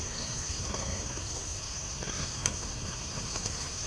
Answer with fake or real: fake